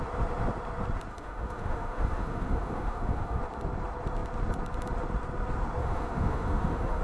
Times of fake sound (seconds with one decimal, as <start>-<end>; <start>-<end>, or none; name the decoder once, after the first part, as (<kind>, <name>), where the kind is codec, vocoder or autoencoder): 1.1-3.4 (autoencoder, DAC-VAE); 5.8-7.0